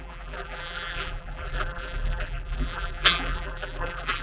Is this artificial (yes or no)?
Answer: yes